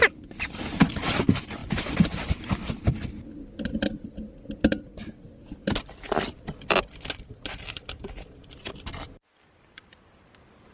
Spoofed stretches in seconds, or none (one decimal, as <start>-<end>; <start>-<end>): none